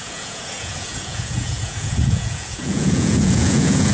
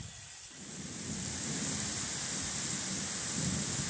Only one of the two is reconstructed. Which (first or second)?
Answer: first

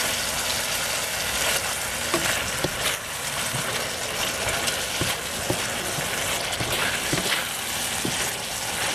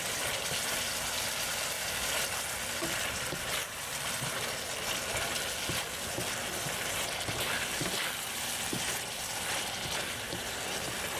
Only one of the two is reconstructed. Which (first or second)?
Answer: second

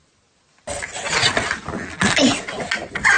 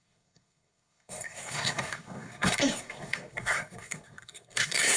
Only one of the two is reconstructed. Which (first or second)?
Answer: second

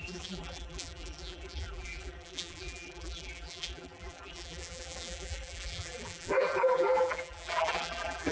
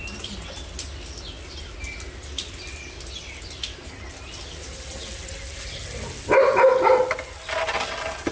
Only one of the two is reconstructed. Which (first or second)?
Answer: first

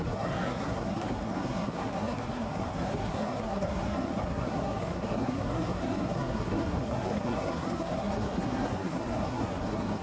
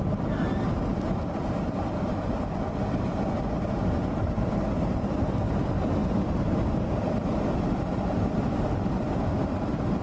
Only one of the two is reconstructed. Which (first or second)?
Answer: first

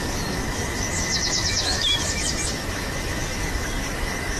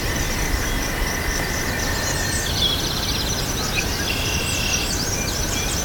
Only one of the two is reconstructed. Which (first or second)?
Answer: first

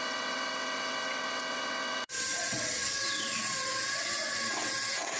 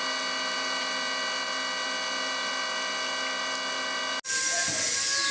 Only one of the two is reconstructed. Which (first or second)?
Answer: first